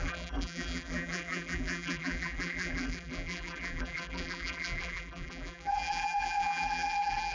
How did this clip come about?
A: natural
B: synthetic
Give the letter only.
B